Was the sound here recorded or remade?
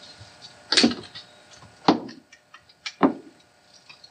recorded